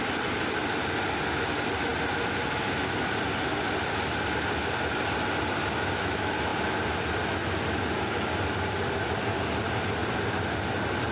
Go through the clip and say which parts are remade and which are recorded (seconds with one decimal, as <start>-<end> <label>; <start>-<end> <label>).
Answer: 0.0-11.1 recorded